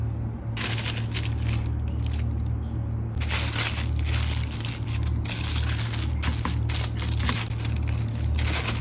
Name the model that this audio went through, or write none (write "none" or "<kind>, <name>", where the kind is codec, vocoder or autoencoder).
none